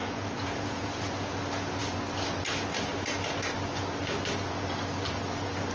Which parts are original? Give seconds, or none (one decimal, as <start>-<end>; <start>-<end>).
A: 1.1-5.7